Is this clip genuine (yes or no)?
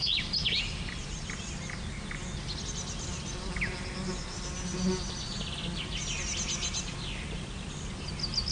yes